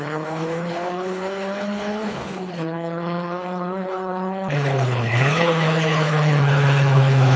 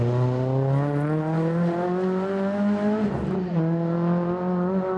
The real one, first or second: second